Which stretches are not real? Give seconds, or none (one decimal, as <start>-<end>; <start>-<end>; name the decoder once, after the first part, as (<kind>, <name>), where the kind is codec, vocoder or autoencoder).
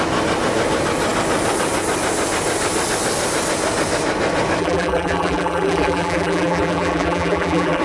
4.6-7.8 (vocoder, BigVGAN v2)